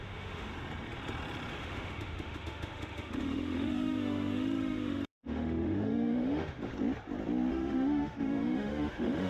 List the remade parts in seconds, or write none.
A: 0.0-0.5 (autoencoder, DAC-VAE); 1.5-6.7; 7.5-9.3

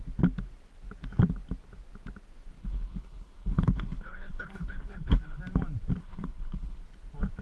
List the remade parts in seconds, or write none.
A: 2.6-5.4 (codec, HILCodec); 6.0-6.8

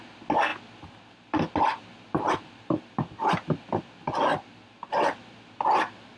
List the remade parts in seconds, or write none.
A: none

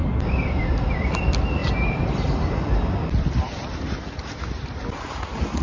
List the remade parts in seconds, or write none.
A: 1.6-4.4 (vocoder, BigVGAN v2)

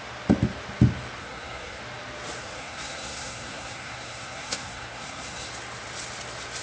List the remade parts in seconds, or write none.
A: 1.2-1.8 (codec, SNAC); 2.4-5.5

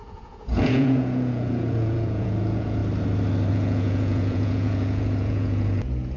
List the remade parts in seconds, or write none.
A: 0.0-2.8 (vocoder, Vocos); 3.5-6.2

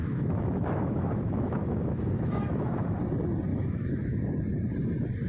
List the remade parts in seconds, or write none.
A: 0.0-3.0 (autoencoder, DAC-VAE); 3.5-4.3